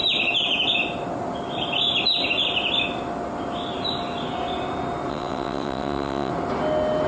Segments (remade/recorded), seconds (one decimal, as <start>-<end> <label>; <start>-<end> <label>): 0.0-5.1 recorded; 5.1-6.3 remade; 6.3-7.1 recorded